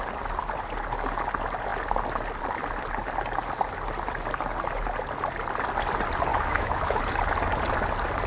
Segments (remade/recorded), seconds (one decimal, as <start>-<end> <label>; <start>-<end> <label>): 0.0-6.3 recorded; 6.3-7.0 remade; 7.0-8.3 recorded

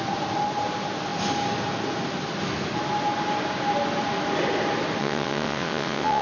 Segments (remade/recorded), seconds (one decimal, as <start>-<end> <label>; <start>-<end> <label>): 0.0-5.0 recorded; 5.0-6.2 remade

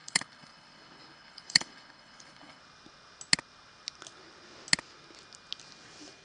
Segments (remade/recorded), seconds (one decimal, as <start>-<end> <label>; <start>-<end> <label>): 0.0-2.6 remade; 2.6-6.2 recorded